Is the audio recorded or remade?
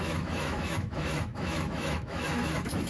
remade